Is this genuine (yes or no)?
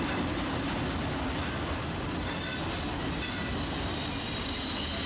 yes